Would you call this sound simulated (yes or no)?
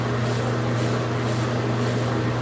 no